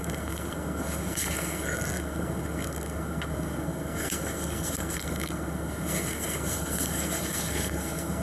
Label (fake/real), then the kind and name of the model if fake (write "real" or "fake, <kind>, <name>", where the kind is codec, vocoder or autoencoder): fake, codec, SNAC